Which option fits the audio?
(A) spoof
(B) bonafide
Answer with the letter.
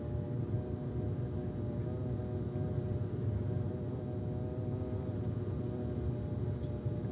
B